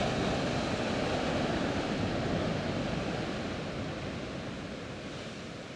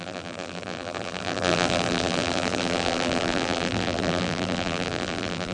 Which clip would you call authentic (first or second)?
first